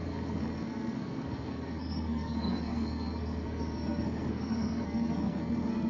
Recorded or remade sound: remade